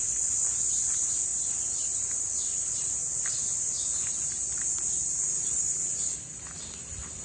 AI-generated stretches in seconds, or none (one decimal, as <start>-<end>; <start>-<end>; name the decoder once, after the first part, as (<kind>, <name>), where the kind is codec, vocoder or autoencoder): none